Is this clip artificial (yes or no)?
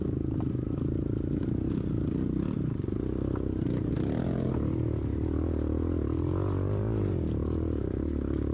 no